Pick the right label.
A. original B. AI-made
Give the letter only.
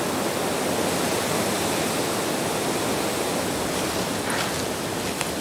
A